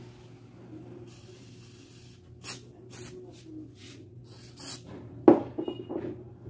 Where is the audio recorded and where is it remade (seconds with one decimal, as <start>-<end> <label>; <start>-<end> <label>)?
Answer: 0.0-6.5 recorded